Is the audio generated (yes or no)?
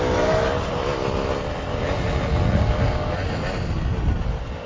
no